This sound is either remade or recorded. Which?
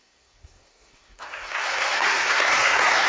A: remade